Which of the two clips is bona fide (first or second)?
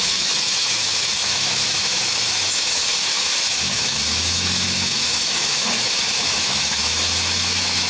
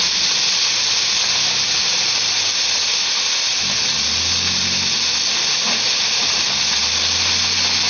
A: second